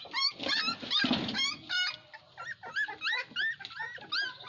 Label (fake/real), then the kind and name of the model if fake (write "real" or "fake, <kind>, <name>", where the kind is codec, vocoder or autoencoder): real